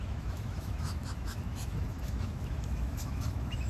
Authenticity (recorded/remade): remade